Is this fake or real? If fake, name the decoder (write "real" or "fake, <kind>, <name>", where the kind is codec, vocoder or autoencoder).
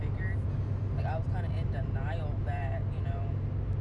real